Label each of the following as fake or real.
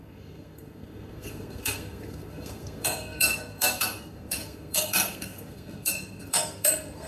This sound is fake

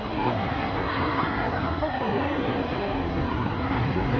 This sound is fake